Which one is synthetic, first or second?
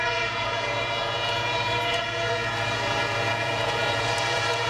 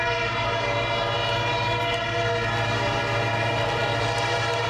first